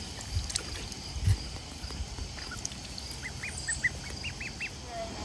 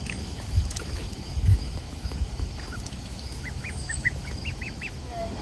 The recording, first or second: first